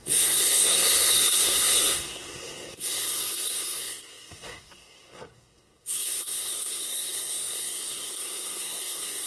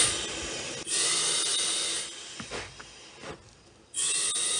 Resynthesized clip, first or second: first